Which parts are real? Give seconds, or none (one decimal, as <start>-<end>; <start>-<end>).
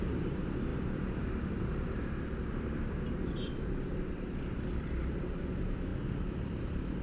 0.0-0.7; 4.9-7.0